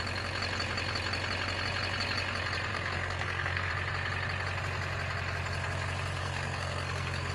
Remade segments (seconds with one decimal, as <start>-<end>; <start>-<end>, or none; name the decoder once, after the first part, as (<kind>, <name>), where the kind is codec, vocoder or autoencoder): 2.7-3.7 (codec, SNAC); 6.2-7.3